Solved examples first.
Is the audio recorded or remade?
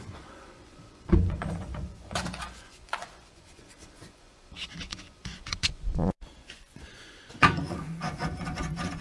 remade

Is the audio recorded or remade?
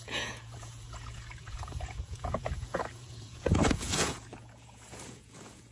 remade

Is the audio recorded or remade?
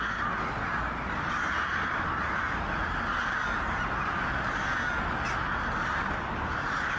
recorded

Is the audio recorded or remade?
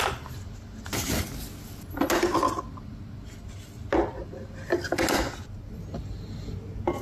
recorded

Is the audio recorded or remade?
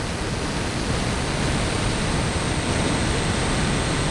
recorded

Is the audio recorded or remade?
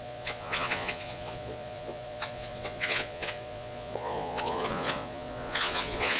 remade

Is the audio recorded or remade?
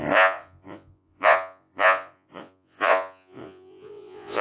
remade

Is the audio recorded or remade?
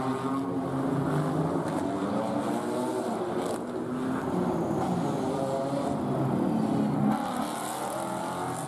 recorded